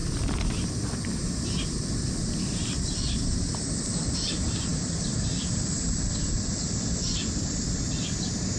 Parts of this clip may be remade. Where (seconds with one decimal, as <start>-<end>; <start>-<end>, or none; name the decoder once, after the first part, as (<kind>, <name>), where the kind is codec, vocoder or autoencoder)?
0.0-8.6 (vocoder, BigVGAN v2)